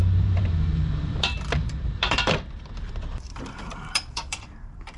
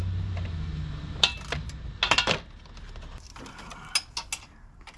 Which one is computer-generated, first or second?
first